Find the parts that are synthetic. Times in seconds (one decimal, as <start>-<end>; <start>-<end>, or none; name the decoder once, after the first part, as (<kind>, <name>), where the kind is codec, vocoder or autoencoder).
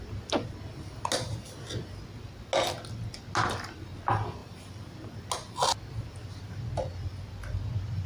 none